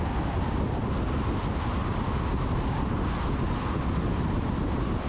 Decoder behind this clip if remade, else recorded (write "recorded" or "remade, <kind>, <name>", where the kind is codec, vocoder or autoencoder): recorded